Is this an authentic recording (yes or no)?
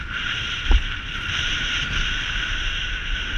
yes